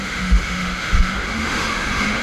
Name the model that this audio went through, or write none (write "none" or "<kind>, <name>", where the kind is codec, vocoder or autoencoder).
autoencoder, DAC-VAE